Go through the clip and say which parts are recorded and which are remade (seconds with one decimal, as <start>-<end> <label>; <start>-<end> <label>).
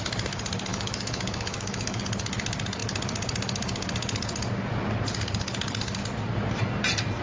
0.0-0.7 recorded; 0.7-2.0 remade; 2.0-7.2 recorded